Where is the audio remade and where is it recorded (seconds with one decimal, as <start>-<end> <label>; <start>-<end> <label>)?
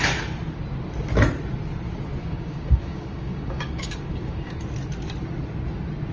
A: 0.0-2.2 recorded; 2.2-4.6 remade; 4.6-6.1 recorded